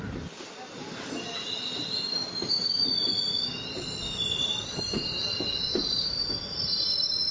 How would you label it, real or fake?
real